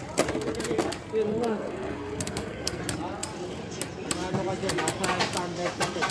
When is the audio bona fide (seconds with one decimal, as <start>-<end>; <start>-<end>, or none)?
0.0-1.3; 2.8-6.1